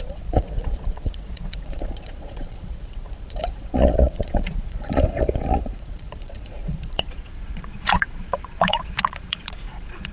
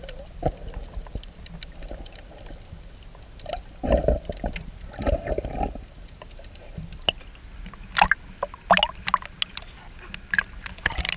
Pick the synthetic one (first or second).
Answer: first